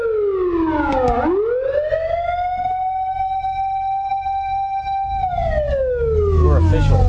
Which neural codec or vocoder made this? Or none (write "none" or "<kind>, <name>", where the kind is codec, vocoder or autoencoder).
none